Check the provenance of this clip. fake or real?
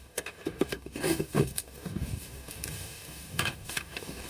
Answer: fake